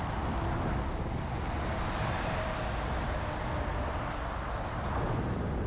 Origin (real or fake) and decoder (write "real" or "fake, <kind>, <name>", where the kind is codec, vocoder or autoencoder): real